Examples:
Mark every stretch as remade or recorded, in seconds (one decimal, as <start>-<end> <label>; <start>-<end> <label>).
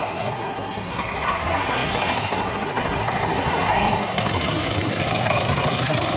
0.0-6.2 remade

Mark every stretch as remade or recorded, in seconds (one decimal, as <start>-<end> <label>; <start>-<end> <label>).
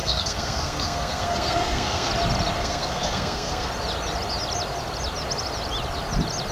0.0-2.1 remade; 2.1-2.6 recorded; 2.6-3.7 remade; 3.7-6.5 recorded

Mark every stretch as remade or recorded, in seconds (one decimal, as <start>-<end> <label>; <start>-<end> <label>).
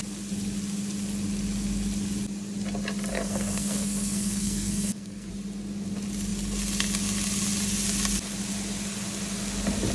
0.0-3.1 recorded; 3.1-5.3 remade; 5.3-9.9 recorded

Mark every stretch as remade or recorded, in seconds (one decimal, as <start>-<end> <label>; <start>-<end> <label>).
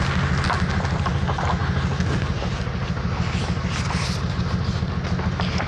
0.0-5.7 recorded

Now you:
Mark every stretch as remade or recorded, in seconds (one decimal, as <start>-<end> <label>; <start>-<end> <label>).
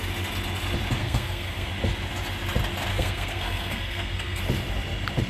0.0-1.0 recorded; 1.0-1.7 remade; 1.7-2.9 recorded; 2.9-4.4 remade; 4.4-5.3 recorded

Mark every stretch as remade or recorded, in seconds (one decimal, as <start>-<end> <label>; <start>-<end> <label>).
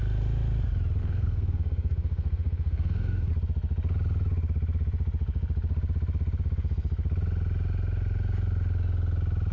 0.0-1.0 recorded; 1.0-3.3 remade; 3.3-9.5 recorded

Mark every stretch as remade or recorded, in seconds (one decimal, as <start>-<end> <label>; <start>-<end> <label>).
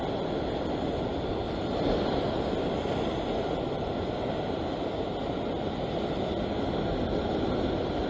0.0-8.1 recorded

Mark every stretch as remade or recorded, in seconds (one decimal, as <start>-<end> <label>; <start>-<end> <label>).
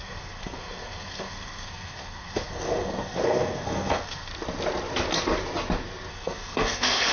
0.0-4.3 remade; 4.3-6.1 recorded; 6.1-7.1 remade